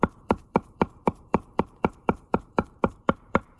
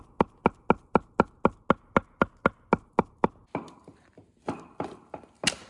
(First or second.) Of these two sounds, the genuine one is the second